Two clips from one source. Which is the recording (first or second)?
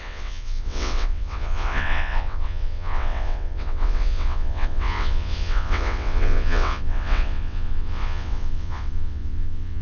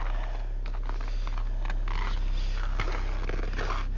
second